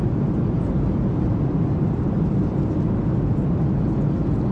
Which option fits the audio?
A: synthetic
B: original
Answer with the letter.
B